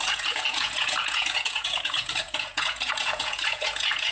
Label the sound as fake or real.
fake